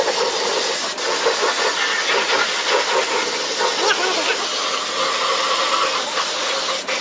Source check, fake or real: real